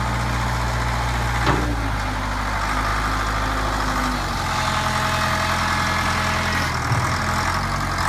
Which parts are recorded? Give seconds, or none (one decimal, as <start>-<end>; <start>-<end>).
0.0-8.1